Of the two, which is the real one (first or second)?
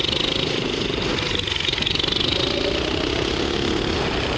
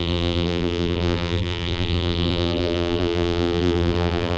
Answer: first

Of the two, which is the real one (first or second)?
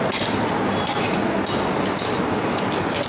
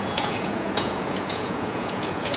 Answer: first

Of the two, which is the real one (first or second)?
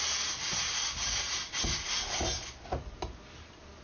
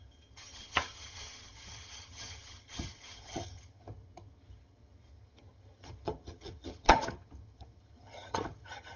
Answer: first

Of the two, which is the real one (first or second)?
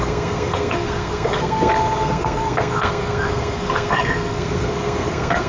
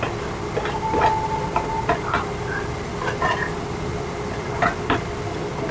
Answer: second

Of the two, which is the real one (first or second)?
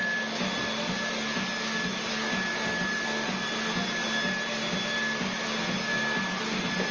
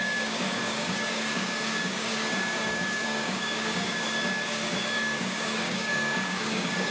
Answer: first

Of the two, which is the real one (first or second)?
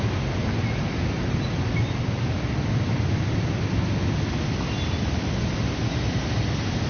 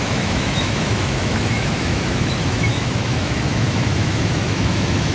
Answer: first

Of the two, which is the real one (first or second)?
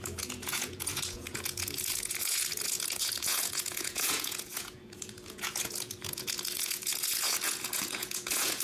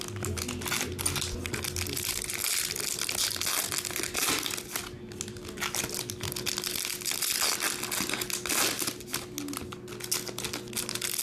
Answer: second